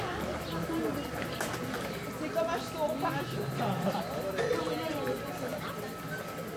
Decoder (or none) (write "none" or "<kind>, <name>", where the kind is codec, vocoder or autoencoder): none